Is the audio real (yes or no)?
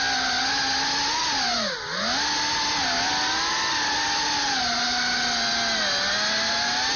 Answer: yes